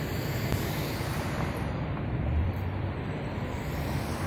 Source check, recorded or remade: remade